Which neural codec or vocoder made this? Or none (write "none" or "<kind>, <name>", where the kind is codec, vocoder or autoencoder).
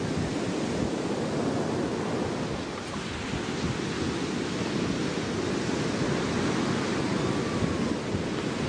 none